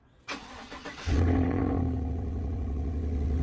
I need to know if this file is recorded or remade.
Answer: remade